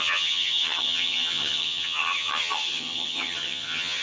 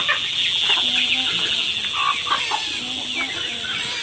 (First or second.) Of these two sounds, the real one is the second